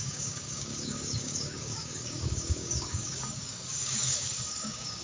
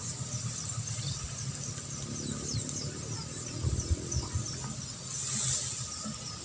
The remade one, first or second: first